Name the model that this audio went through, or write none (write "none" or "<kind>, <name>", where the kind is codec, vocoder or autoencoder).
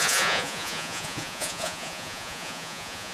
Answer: vocoder, Vocos